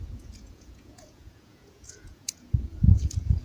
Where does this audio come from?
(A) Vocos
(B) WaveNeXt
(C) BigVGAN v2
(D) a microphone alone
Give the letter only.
A